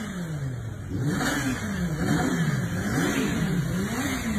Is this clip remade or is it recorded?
recorded